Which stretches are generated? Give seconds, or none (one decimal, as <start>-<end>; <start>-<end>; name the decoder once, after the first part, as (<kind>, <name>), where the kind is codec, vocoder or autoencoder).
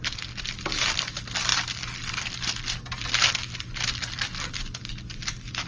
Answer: 0.0-1.5 (vocoder, BigVGAN v2); 4.9-5.7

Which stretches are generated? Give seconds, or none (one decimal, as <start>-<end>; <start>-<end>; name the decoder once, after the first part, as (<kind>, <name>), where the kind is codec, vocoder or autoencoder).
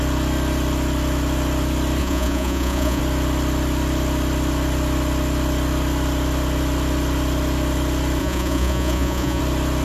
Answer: 2.0-3.0 (vocoder, Vocos); 8.2-9.4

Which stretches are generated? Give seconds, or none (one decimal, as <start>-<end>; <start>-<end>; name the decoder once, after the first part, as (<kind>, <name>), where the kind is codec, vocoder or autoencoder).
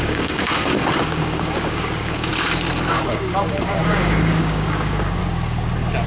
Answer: 0.0-2.3 (codec, DAC); 2.9-5.2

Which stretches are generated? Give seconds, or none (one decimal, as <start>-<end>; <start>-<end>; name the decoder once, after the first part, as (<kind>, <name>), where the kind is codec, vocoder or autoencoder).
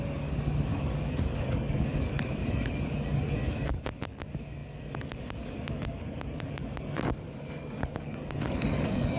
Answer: 0.0-9.2 (codec, DAC)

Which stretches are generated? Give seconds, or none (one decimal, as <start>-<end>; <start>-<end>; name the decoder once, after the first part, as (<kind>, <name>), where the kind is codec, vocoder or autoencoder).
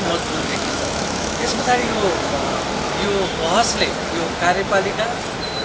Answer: 0.5-2.6 (autoencoder, DAC-VAE)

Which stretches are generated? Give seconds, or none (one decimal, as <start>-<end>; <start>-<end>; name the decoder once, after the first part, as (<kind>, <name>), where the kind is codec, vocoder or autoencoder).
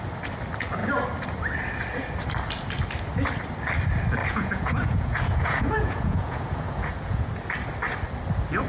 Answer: 4.2-7.3 (vocoder, Vocos)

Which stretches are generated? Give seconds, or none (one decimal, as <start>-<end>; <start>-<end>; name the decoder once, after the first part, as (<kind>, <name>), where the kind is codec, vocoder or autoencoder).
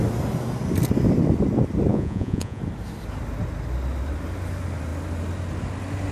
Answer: 1.9-2.6 (vocoder, Vocos)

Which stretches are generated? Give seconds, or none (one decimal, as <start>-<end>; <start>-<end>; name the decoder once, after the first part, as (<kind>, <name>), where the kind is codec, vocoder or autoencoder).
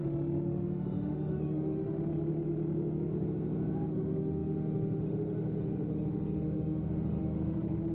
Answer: 0.0-3.1 (autoencoder, DAC-VAE); 3.9-7.9